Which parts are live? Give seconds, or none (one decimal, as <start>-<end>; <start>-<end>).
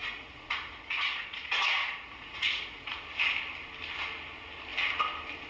3.3-5.5